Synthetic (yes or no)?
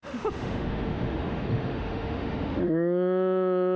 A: yes